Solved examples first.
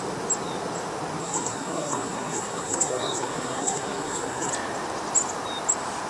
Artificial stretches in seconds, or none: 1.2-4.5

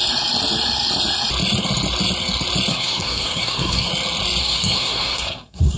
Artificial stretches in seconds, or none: 2.7-3.9; 4.4-5.8

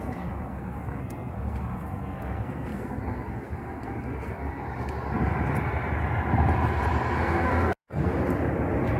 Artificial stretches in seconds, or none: 0.0-4.6; 7.1-8.1

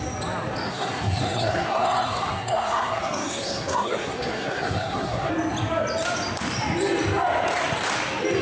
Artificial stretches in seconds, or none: 0.7-5.3